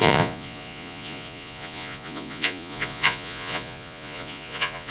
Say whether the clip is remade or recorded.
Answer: remade